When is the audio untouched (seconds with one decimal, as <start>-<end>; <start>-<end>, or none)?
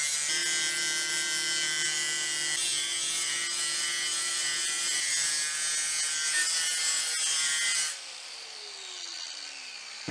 0.0-4.1; 5.3-10.1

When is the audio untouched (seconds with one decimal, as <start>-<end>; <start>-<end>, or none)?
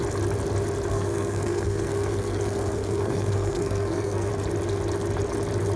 0.0-0.9; 4.3-5.8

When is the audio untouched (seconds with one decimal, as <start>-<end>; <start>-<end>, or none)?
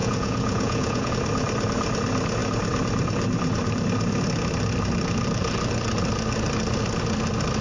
1.1-7.6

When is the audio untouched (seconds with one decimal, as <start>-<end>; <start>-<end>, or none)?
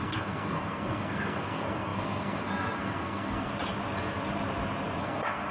3.5-5.0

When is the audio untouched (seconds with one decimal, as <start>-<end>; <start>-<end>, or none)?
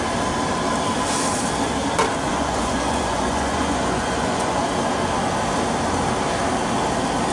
0.0-2.3; 4.6-7.3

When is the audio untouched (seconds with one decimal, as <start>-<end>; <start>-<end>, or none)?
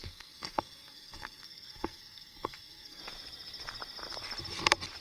3.0-5.0